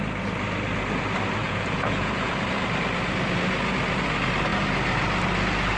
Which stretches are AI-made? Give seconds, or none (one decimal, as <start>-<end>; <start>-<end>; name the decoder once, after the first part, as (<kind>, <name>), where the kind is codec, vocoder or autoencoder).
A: 1.4-2.3 (vocoder, Vocos)